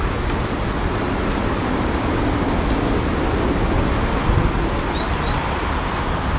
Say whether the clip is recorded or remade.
recorded